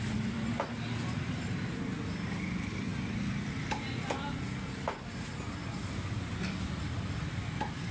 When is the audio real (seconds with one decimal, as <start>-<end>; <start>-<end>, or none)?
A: 0.0-7.9